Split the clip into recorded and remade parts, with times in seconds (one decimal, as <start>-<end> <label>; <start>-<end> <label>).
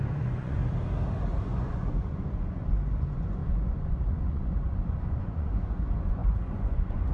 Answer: 0.0-0.6 remade; 0.6-1.4 recorded; 1.4-7.1 remade